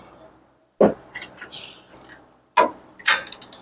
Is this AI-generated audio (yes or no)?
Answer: no